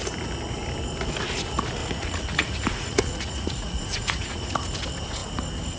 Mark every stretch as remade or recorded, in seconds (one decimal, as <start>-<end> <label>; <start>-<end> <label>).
0.0-1.8 recorded; 1.8-4.5 remade; 4.5-5.8 recorded